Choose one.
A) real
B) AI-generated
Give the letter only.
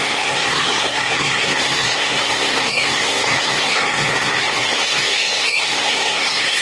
B